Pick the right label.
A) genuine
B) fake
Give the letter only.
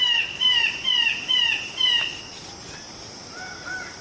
A